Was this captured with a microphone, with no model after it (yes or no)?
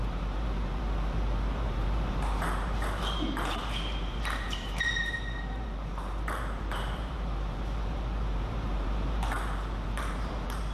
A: no